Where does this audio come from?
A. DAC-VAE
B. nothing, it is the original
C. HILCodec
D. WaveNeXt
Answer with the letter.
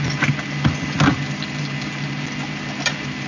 B